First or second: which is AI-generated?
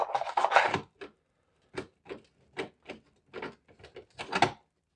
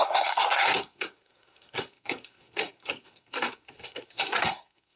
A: second